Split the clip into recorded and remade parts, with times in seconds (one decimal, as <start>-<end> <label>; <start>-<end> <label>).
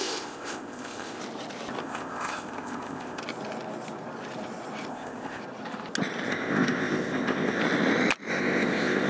0.0-1.2 remade; 1.2-1.8 recorded; 1.8-3.2 remade; 3.2-4.9 recorded; 4.9-5.4 remade; 5.4-6.3 recorded; 6.3-7.6 remade; 7.6-8.3 recorded; 8.3-9.1 remade